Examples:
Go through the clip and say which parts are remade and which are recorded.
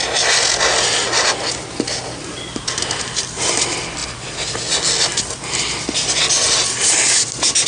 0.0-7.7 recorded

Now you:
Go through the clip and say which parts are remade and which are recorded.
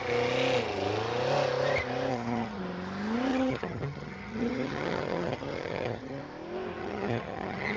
0.0-2.1 recorded; 2.1-2.6 remade; 2.6-3.3 recorded; 3.3-6.2 remade; 6.2-6.8 recorded; 6.8-7.8 remade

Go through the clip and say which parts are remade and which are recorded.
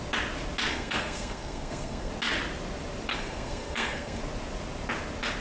0.0-0.7 recorded; 0.7-2.1 remade; 2.1-3.1 recorded; 3.1-4.2 remade; 4.2-5.4 recorded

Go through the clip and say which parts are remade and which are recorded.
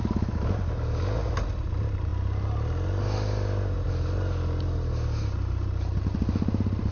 0.0-6.9 recorded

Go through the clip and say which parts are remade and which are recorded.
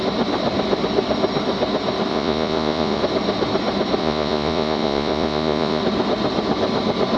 0.0-2.1 recorded; 2.1-3.0 remade; 3.0-4.0 recorded; 4.0-5.8 remade; 5.8-7.2 recorded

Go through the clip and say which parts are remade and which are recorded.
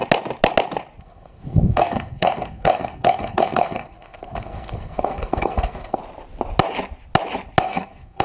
0.0-1.0 recorded; 1.0-6.0 remade; 6.0-7.6 recorded; 7.6-8.2 remade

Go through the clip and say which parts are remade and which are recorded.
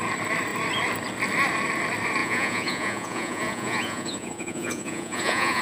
0.0-2.2 recorded; 2.2-5.6 remade